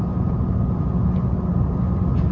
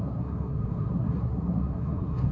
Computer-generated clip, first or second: second